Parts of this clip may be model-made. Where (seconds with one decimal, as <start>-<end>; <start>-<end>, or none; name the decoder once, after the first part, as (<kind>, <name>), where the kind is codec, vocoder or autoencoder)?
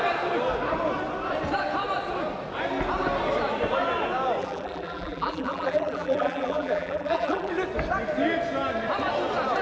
4.4-7.5 (vocoder, BigVGAN v2)